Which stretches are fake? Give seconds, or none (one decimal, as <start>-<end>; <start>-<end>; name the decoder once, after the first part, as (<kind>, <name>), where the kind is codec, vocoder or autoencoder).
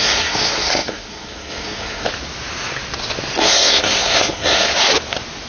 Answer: 0.0-2.1 (codec, SNAC); 3.4-4.7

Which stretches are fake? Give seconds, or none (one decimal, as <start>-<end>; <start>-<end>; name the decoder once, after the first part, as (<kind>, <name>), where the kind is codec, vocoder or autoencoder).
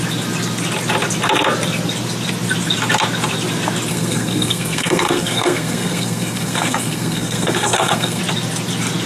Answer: 3.9-8.2 (codec, SNAC)